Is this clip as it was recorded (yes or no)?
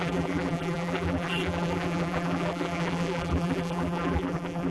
no